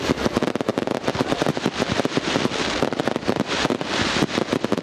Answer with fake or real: fake